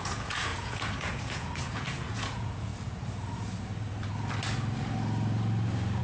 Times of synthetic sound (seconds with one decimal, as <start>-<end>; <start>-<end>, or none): 0.0-2.7